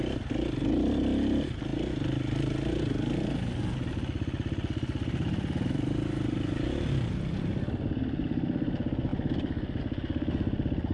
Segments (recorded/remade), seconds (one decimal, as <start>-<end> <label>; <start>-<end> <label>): 0.0-10.9 recorded